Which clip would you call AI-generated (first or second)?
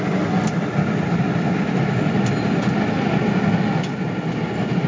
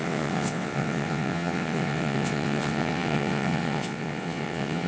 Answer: second